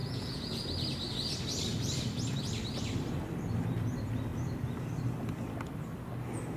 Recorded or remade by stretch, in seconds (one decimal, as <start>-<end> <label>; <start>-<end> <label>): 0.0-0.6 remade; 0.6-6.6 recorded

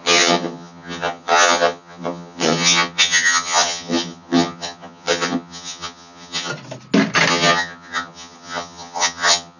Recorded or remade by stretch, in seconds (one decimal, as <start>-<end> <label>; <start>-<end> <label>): 0.0-6.5 remade; 6.5-7.3 recorded; 7.3-9.6 remade

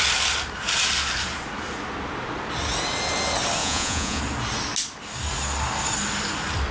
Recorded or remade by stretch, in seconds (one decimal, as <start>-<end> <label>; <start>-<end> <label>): 0.0-3.6 recorded; 3.6-4.2 remade; 4.2-6.7 recorded

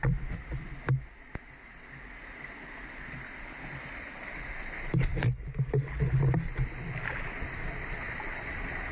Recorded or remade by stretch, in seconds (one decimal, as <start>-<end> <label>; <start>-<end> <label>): 0.0-8.9 recorded

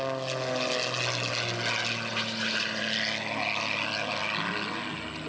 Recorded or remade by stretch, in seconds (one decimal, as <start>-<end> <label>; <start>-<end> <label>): 0.0-2.1 recorded; 2.1-2.8 remade; 2.8-5.3 recorded